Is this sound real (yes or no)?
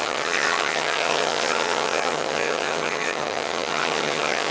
no